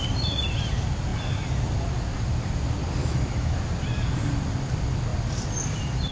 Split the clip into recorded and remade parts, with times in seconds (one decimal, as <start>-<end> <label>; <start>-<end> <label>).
0.0-3.0 recorded; 3.0-3.6 remade; 3.6-6.1 recorded

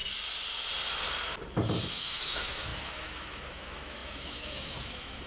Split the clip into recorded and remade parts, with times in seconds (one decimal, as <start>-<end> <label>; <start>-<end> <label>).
0.0-1.9 recorded; 1.9-5.3 remade

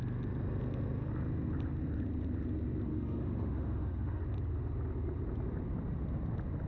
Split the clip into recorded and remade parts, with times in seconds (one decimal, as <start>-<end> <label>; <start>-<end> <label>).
0.0-2.9 recorded; 2.9-4.2 remade; 4.2-6.7 recorded